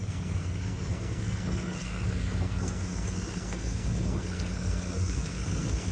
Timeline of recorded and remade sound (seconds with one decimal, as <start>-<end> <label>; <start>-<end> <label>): 0.0-5.9 remade